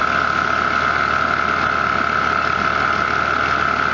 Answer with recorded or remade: recorded